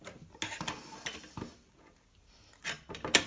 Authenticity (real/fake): real